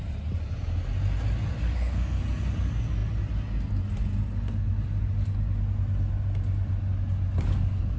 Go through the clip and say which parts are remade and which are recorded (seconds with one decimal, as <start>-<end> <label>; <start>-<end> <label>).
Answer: 0.0-1.5 recorded; 1.5-2.2 remade; 2.2-8.0 recorded